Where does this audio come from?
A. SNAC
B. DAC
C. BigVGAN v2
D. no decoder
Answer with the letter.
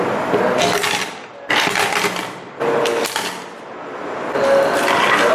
D